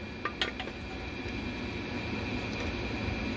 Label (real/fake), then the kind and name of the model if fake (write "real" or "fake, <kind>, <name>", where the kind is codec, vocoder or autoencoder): real